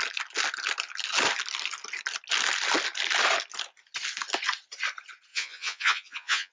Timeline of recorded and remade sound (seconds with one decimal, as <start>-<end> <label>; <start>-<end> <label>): 0.0-5.3 recorded; 5.3-6.5 remade